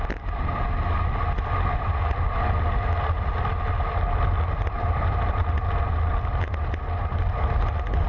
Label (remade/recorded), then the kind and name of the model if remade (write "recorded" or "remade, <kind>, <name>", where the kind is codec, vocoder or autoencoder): recorded